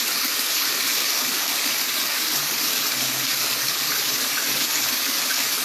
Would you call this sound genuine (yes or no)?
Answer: no